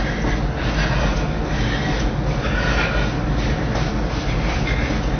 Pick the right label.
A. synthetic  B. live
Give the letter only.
B